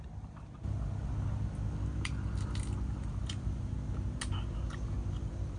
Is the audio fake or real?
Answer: real